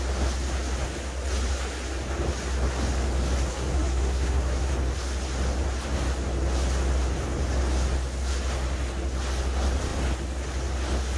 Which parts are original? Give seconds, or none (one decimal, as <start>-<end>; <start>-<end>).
0.0-3.5; 4.7-11.2